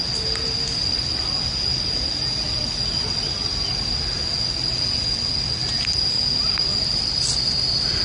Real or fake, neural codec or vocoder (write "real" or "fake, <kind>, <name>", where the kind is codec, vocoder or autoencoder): real